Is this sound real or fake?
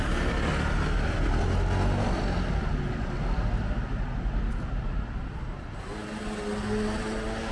real